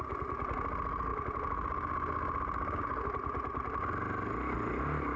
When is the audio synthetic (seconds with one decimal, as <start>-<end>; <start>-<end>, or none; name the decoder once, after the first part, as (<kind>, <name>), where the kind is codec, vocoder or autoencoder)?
none